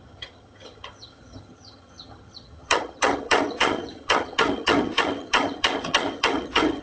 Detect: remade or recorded remade